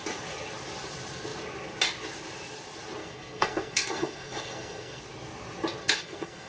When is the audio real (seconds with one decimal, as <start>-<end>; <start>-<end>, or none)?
0.0-3.0; 5.0-5.8

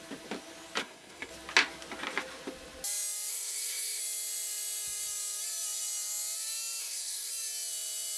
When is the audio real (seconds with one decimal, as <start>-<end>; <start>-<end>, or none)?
0.0-0.8; 1.3-3.3; 4.0-6.8; 7.3-8.2

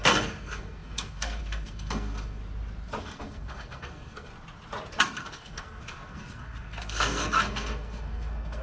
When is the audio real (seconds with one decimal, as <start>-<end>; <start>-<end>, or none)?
2.4-3.0; 4.3-4.9

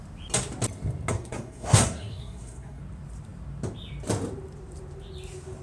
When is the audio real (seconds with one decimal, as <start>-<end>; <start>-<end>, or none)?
0.0-1.1; 2.8-5.6